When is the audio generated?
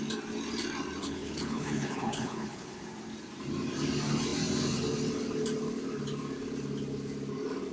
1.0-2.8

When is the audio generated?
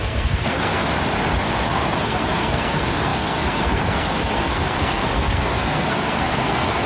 0.0-0.8; 1.4-6.9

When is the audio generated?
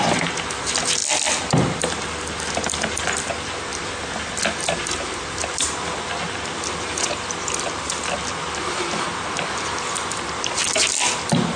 none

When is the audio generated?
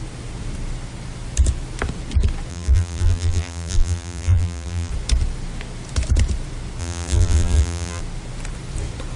2.5-4.9; 6.8-8.0